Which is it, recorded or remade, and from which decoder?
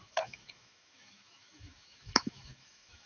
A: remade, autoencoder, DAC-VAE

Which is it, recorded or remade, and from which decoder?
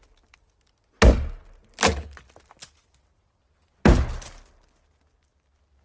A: recorded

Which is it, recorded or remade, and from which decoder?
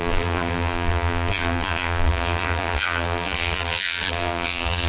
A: remade, vocoder, BigVGAN v2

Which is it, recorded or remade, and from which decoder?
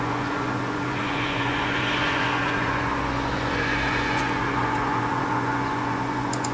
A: remade, vocoder, Vocos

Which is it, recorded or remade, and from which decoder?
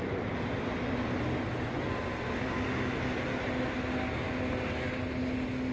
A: recorded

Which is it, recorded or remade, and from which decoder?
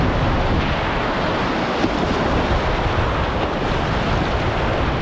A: recorded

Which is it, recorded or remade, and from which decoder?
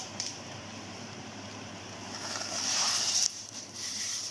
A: remade, vocoder, BigVGAN v2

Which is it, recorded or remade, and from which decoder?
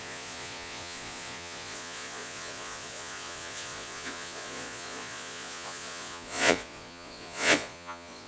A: remade, vocoder, Vocos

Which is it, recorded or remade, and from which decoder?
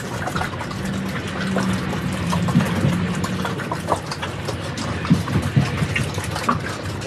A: recorded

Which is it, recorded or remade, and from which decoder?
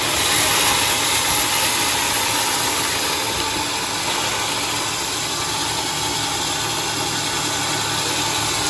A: recorded